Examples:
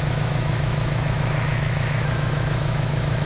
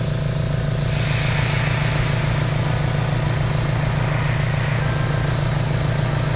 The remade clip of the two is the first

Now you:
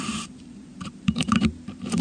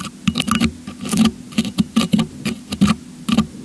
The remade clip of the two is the first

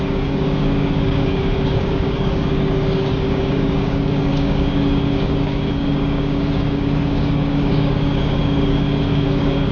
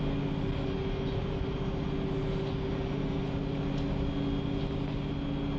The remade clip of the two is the first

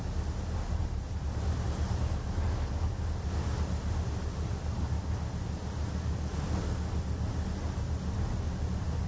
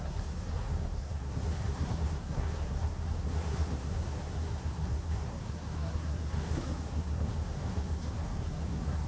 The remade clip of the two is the second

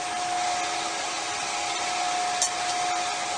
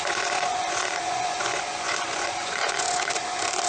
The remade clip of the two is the second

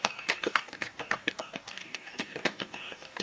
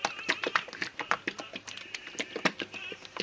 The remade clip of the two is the first